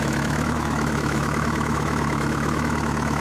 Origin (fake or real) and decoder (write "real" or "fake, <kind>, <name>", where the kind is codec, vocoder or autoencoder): fake, autoencoder, DAC-VAE